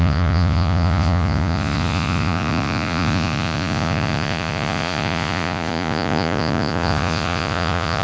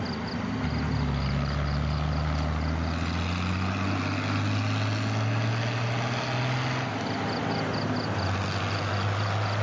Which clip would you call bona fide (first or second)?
second